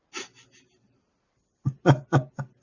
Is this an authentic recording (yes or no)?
yes